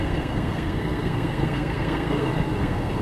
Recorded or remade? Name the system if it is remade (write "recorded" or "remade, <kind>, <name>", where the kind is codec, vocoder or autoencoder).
remade, codec, SNAC